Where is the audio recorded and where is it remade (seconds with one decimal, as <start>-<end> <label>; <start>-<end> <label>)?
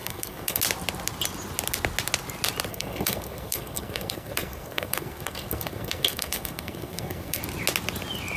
0.0-0.6 remade; 0.6-2.7 recorded; 2.7-7.4 remade; 7.4-8.4 recorded